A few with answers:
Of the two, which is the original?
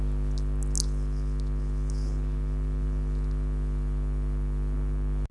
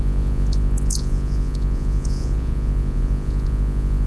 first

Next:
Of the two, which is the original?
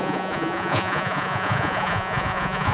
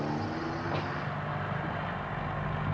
second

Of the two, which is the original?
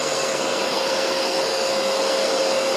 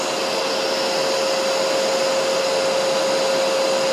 second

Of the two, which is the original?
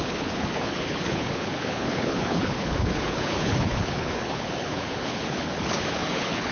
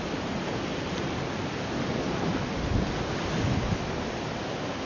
second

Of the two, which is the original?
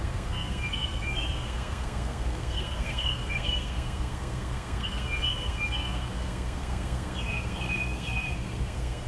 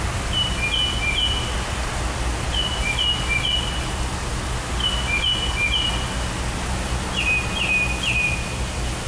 second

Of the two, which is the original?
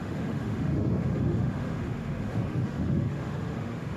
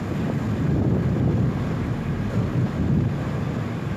second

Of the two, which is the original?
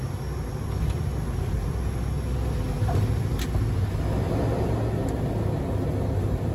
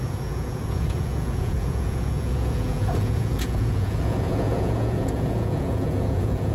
first